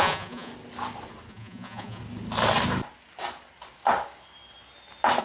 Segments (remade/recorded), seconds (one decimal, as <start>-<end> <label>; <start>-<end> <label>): 0.0-0.5 remade; 0.5-1.3 recorded; 1.3-2.0 remade; 2.0-5.2 recorded